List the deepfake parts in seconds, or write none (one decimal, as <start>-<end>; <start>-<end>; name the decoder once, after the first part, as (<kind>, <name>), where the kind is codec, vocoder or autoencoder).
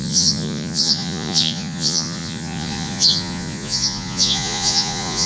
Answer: 0.0-5.3 (vocoder, Vocos)